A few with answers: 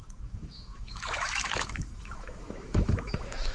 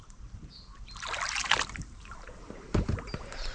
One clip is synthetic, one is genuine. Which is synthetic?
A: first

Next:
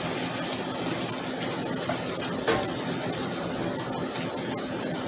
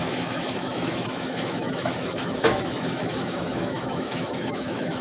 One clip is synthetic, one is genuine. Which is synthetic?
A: second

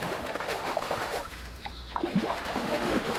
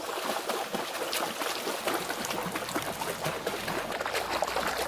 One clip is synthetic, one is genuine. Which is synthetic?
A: first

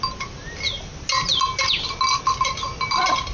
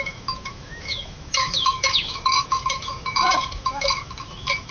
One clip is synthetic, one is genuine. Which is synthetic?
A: second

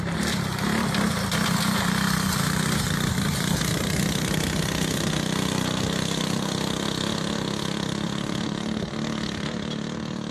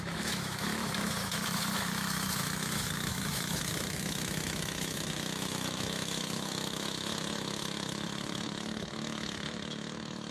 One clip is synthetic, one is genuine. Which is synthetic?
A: second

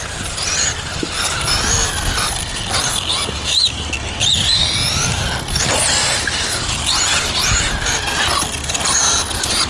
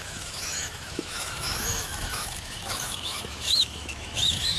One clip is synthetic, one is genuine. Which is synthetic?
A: second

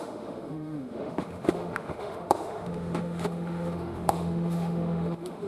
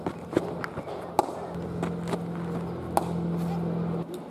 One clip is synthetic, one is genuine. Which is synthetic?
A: first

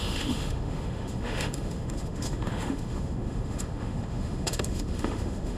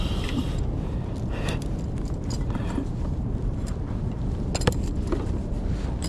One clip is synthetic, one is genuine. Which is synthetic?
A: first